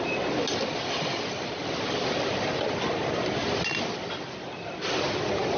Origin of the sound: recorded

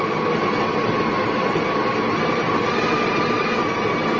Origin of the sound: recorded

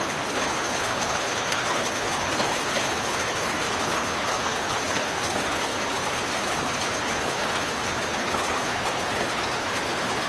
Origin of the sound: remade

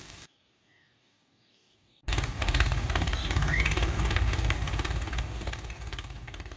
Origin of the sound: remade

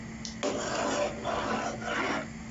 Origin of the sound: recorded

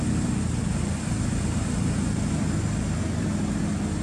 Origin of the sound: recorded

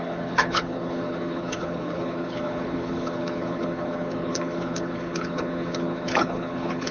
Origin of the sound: remade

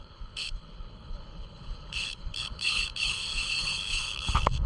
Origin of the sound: remade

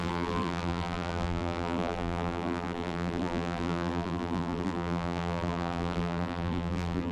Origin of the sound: remade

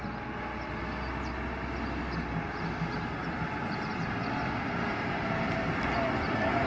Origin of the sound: recorded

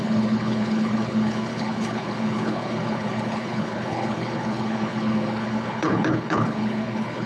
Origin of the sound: remade